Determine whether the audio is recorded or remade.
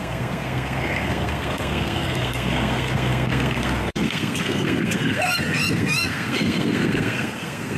remade